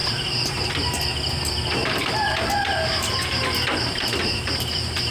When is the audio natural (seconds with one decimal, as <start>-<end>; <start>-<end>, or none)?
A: 0.0-1.8